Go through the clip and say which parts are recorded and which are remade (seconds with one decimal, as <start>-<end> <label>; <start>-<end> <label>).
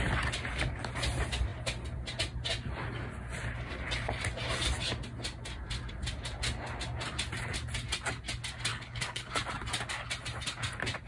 0.0-8.7 recorded; 8.7-9.3 remade; 9.3-11.1 recorded